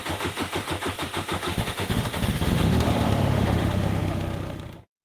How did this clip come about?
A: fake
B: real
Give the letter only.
A